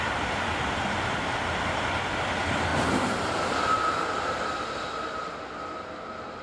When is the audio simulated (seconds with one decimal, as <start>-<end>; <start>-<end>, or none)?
2.7-3.8